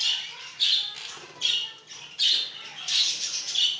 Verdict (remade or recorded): recorded